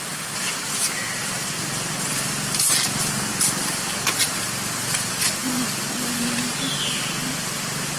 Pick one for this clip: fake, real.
real